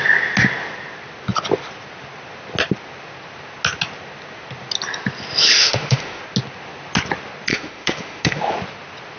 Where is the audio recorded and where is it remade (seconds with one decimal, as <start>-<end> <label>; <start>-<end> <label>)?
0.0-5.6 recorded; 5.6-6.2 remade; 6.2-7.5 recorded; 7.5-8.4 remade; 8.4-9.2 recorded